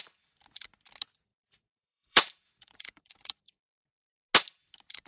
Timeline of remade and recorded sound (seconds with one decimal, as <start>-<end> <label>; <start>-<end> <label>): 0.0-1.3 recorded; 1.3-3.8 remade; 3.8-5.1 recorded